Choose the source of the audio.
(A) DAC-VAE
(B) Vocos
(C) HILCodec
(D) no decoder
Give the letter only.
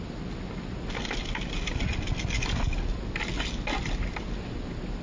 D